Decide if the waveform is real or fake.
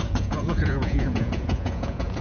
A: fake